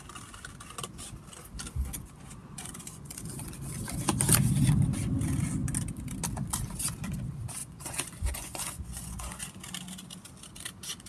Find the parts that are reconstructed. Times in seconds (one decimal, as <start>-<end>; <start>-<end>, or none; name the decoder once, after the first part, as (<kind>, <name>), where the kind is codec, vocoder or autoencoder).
2.4-3.5 (vocoder, Vocos); 7.6-9.4